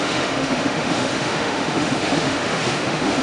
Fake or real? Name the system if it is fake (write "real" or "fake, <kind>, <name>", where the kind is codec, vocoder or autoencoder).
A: fake, autoencoder, DAC-VAE